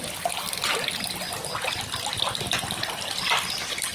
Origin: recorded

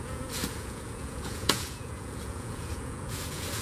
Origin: remade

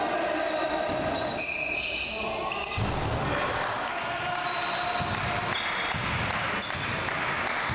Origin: recorded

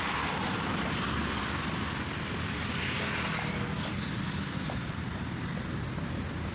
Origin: recorded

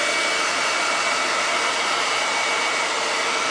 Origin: recorded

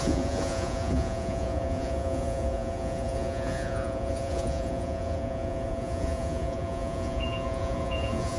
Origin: remade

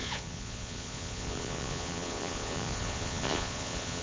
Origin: remade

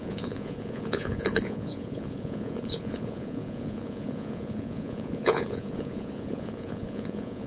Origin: remade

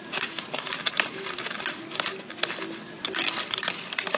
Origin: recorded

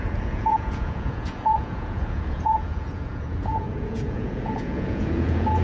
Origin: remade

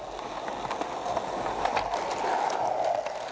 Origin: recorded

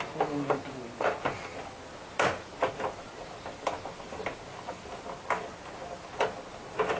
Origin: recorded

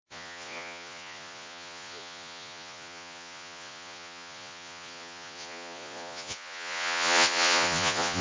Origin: remade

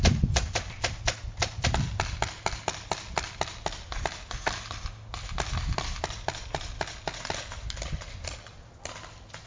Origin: recorded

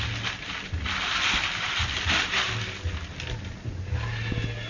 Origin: recorded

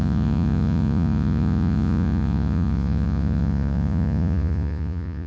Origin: remade